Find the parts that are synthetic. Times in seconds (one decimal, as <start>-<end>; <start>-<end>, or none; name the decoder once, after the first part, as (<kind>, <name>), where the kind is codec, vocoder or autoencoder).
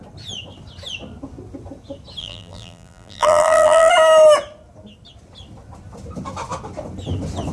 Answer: 2.2-3.9 (vocoder, BigVGAN v2)